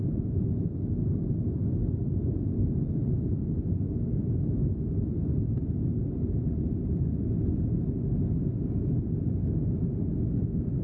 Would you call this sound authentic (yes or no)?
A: yes